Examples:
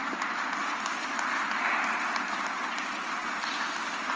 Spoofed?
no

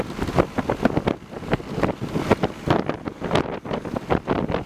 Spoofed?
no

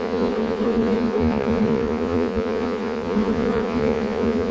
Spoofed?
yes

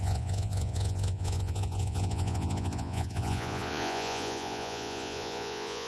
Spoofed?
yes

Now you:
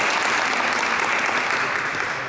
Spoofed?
no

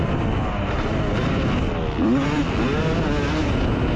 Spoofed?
no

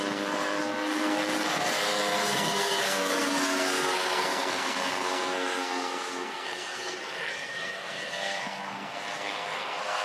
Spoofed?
yes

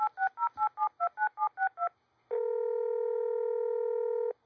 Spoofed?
no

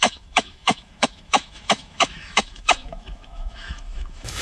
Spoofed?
yes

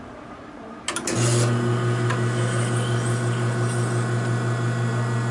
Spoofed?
no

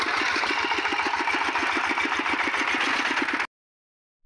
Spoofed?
no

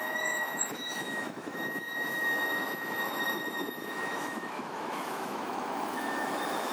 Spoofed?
yes